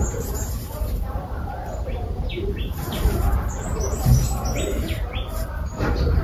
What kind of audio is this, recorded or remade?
remade